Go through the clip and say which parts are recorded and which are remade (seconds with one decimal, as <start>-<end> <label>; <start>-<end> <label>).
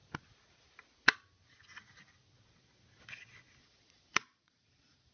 0.0-3.6 recorded; 3.6-5.1 remade